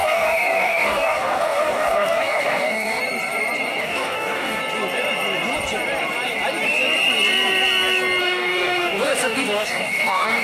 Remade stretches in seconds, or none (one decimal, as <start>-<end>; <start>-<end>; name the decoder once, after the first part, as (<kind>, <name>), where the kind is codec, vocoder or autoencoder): 0.0-3.0 (codec, DAC); 3.8-4.6; 8.2-10.4